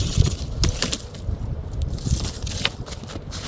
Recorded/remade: recorded